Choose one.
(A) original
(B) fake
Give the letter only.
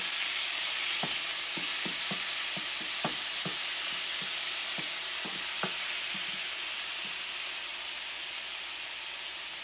A